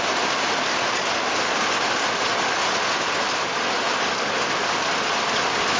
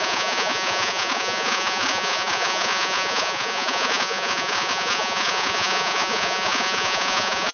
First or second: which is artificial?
second